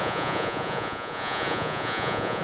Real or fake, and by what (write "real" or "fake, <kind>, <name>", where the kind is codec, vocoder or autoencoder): fake, vocoder, Vocos